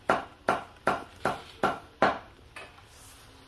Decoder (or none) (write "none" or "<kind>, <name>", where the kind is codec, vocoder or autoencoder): none